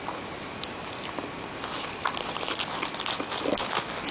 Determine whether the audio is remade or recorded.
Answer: recorded